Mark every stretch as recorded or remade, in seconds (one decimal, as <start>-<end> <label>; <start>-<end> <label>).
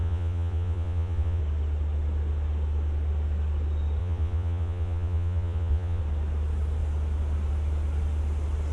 0.0-1.4 remade; 1.4-4.0 recorded; 4.0-6.0 remade; 6.0-8.7 recorded